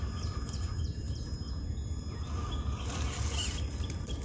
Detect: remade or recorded recorded